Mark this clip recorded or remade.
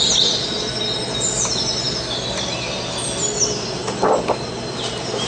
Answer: recorded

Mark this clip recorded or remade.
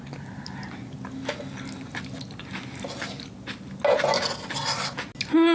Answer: recorded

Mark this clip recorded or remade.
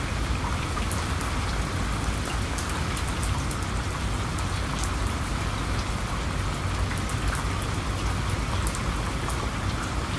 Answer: recorded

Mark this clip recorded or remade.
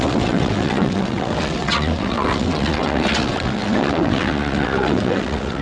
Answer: remade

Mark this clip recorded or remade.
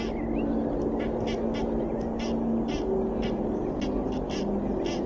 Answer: recorded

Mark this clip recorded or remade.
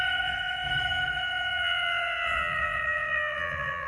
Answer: remade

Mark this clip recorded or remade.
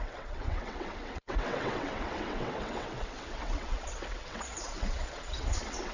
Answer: remade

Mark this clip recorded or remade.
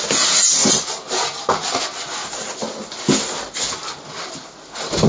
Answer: recorded